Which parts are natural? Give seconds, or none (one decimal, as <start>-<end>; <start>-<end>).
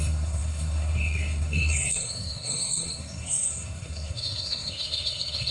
none